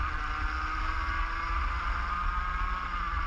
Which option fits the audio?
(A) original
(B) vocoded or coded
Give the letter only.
A